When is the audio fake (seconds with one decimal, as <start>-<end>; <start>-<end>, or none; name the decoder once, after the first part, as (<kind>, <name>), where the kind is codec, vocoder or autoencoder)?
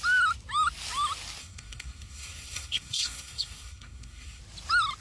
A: 1.4-4.4 (codec, SNAC)